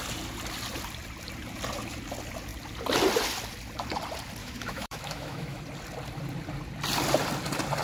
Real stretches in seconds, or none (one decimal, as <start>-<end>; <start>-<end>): 0.0-4.4; 5.6-7.8